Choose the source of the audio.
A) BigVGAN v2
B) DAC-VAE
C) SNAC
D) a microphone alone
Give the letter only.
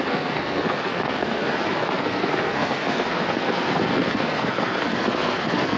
C